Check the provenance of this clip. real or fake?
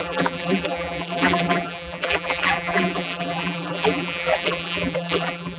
fake